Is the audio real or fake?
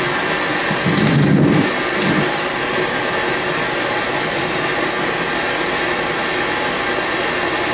real